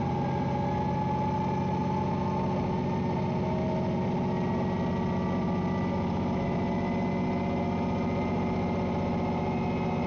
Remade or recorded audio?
recorded